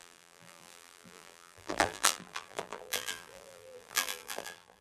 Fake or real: fake